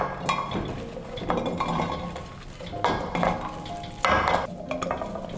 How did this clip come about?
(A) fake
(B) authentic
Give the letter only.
B